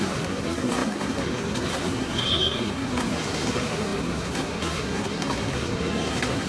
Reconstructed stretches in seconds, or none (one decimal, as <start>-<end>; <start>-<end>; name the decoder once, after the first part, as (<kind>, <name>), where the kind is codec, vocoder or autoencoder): 0.0-6.5 (codec, SNAC)